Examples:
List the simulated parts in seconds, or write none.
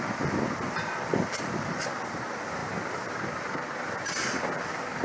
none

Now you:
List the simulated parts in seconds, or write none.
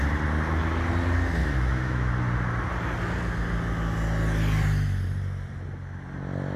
1.4-2.1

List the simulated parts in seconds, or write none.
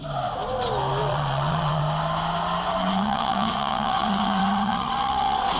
1.0-1.8; 2.8-5.6